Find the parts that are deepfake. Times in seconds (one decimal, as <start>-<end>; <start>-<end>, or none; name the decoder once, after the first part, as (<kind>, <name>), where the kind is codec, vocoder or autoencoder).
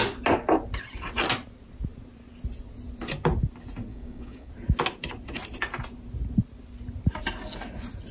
3.9-4.5 (codec, DAC)